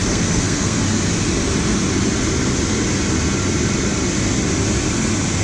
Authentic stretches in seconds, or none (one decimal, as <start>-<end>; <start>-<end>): 0.8-5.4